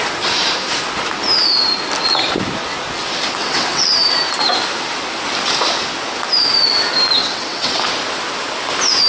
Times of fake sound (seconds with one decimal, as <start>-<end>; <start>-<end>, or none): 3.4-3.9; 7.2-7.8